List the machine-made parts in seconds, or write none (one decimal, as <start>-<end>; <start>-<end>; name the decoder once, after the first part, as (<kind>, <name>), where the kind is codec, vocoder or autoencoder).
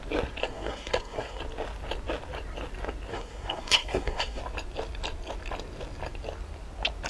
0.4-1.4 (codec, SNAC); 3.1-4.4